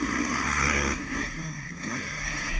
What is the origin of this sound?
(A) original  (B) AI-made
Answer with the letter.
B